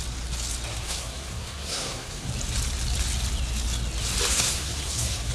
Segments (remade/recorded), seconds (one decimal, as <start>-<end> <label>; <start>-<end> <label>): 0.0-0.7 recorded; 0.7-2.3 remade; 2.3-4.3 recorded; 4.3-5.3 remade